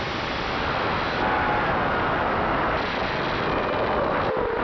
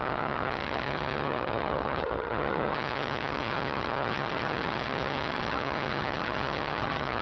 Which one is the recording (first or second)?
first